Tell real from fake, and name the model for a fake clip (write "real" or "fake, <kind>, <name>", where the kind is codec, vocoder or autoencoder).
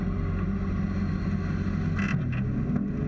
real